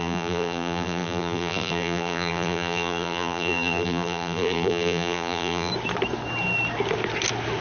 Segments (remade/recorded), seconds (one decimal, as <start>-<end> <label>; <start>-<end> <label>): 0.0-5.7 remade; 5.7-7.6 recorded